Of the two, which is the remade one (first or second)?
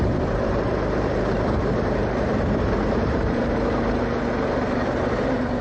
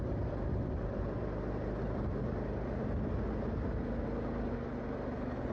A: first